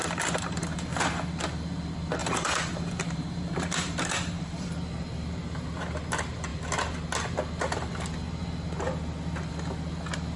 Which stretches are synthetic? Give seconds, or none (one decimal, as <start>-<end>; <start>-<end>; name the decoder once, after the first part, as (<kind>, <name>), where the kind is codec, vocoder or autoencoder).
0.0-0.9 (vocoder, BigVGAN v2); 2.2-4.7